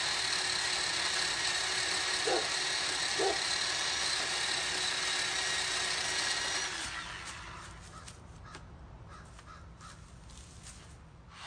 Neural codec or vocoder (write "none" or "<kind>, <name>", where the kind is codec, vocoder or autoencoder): none